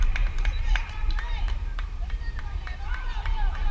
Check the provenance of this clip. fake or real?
fake